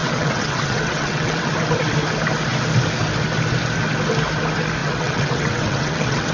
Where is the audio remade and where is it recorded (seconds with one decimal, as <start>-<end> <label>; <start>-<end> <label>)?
0.0-1.5 remade; 1.5-4.8 recorded; 4.8-6.3 remade